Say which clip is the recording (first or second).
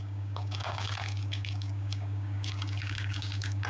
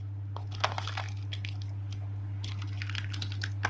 second